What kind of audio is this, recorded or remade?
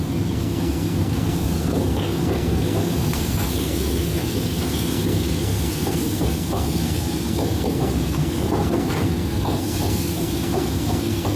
remade